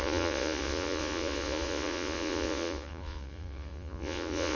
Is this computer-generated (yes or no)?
yes